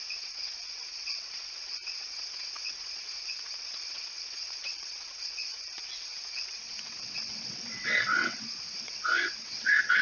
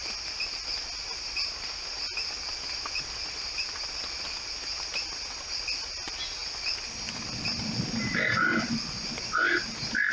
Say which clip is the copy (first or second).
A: first